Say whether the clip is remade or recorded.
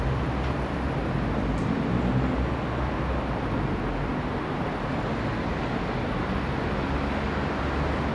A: recorded